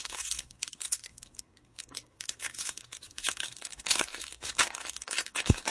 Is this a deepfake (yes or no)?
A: yes